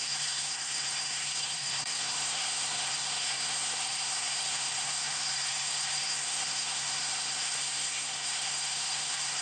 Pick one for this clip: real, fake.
fake